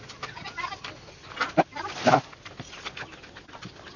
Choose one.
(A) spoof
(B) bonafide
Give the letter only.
B